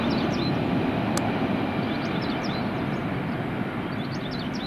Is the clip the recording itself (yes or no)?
yes